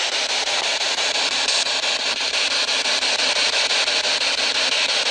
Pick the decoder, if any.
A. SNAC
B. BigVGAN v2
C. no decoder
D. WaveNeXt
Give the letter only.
C